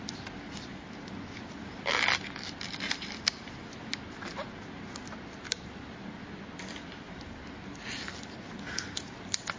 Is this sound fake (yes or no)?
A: no